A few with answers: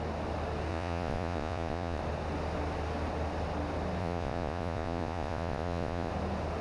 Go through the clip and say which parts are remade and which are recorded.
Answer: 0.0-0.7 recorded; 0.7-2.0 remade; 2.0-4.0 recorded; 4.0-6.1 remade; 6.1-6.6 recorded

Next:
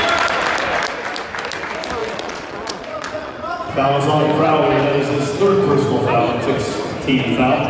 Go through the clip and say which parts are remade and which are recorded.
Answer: 0.0-2.0 recorded; 2.0-3.7 remade; 3.7-7.7 recorded

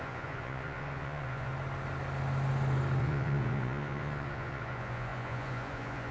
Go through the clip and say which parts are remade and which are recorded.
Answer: 0.0-1.5 remade; 1.5-3.0 recorded; 3.0-6.1 remade